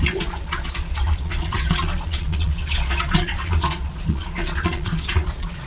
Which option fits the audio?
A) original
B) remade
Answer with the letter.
B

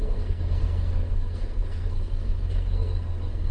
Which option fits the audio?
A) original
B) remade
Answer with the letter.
B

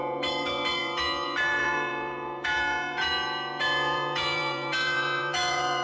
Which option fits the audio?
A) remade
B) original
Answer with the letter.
A